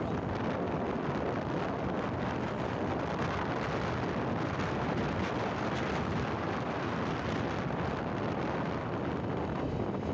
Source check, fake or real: real